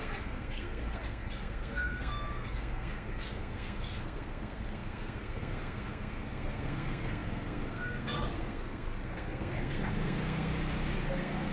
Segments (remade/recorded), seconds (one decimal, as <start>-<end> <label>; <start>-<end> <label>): 0.0-10.5 remade; 10.5-11.1 recorded; 11.1-11.5 remade